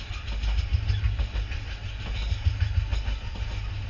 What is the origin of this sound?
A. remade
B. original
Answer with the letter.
B